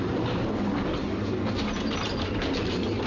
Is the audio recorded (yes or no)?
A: yes